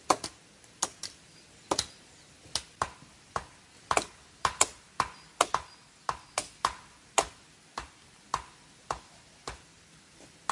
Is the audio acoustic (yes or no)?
yes